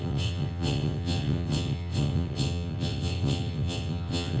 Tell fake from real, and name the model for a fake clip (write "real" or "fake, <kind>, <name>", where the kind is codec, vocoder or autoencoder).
fake, vocoder, WaveNeXt